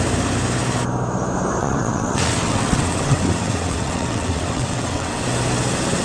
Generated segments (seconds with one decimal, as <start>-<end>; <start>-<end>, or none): 1.6-5.2